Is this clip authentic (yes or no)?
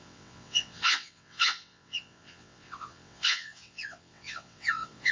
no